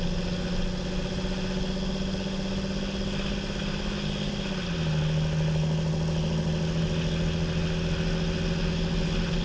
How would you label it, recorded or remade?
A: recorded